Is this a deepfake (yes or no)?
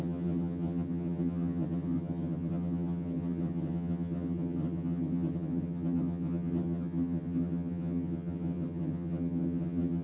yes